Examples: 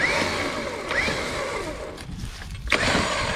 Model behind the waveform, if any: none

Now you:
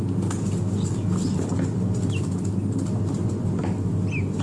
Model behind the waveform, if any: none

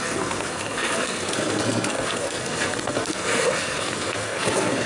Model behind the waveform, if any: codec, SNAC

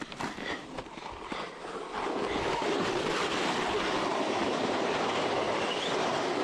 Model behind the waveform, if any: none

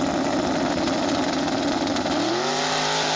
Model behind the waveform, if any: none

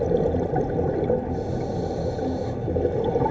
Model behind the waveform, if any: none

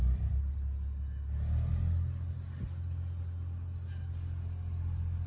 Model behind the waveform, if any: none